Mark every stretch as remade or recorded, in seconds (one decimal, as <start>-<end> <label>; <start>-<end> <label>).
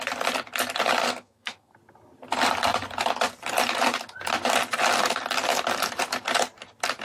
0.0-1.0 recorded; 1.0-1.7 remade; 1.7-7.0 recorded